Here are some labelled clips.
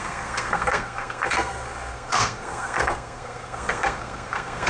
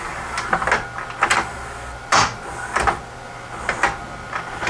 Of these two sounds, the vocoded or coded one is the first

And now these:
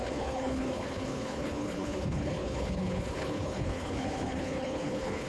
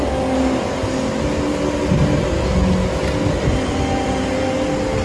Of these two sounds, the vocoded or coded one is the first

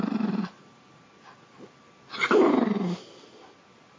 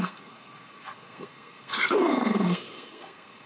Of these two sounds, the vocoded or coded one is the second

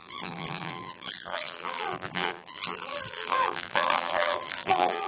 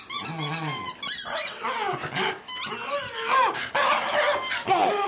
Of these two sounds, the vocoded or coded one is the first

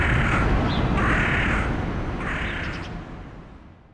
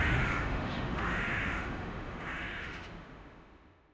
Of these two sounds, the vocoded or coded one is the second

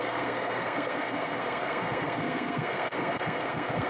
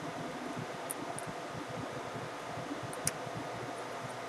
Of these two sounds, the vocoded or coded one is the first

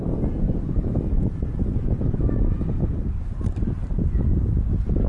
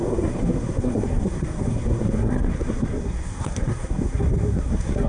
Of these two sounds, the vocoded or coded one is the second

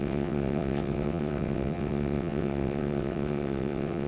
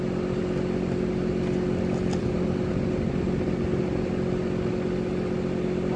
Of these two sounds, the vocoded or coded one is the first